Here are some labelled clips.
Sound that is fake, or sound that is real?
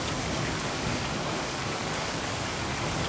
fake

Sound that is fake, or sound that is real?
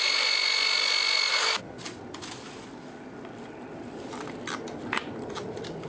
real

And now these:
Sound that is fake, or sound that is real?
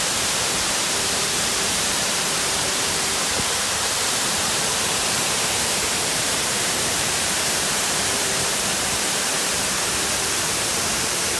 fake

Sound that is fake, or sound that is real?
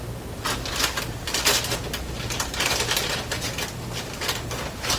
real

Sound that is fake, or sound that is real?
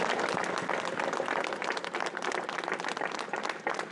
real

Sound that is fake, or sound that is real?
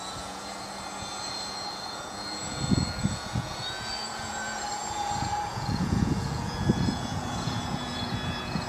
fake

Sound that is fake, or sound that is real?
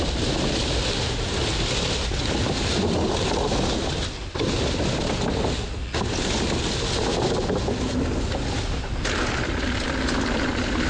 real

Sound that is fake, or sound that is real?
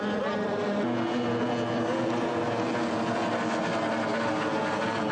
real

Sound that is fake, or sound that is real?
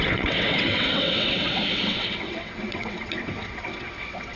fake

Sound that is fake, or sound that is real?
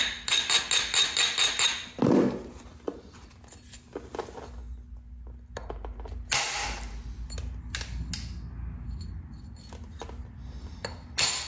real